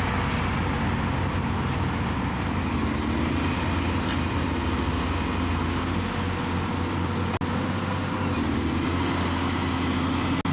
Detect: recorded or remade recorded